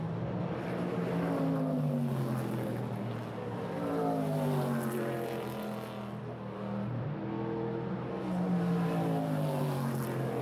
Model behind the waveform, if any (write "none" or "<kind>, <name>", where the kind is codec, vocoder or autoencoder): none